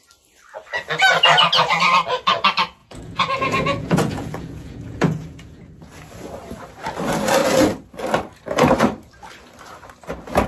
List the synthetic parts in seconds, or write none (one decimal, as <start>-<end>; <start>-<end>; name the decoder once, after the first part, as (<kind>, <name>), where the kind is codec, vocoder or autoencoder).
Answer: 2.8-5.9 (vocoder, Vocos)